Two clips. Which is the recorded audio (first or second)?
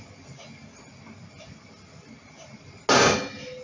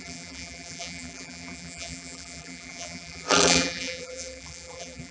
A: first